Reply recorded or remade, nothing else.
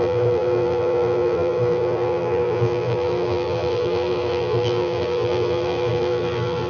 remade